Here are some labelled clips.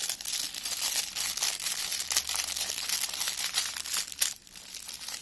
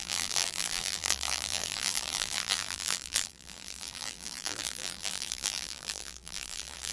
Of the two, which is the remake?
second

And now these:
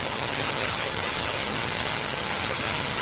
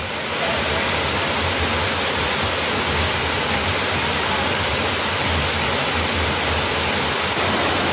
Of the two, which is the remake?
first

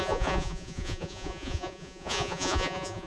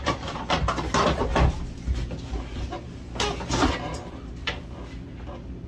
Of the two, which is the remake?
first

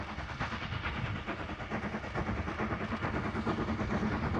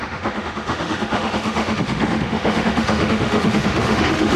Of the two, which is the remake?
second